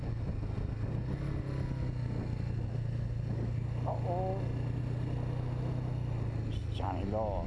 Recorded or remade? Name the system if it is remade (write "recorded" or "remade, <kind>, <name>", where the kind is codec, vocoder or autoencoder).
recorded